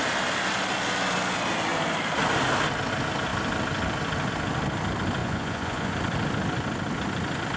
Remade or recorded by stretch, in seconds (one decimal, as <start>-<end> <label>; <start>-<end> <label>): 0.0-5.2 recorded; 5.2-5.9 remade; 5.9-7.6 recorded